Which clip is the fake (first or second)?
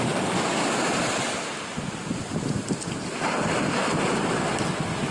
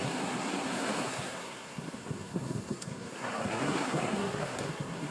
second